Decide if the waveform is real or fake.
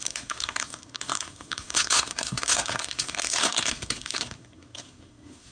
fake